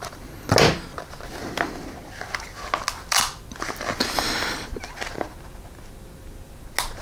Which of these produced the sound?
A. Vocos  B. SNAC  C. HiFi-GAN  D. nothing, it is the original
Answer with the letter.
D